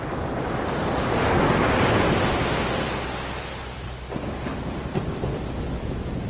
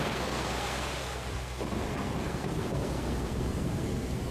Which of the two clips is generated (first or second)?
second